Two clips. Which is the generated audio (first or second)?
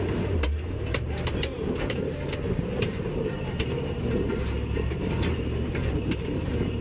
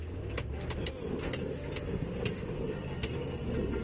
first